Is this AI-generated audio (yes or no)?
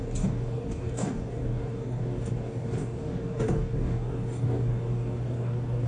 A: yes